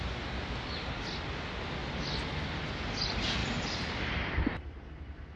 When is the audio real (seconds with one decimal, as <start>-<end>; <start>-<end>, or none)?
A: 0.0-3.4